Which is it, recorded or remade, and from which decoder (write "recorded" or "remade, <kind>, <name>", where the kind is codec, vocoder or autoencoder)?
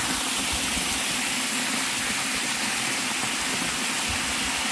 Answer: recorded